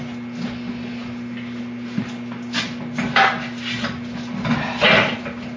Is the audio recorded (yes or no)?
yes